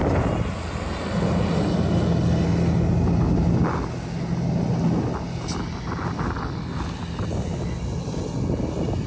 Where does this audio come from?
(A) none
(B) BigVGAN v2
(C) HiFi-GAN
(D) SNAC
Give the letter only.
A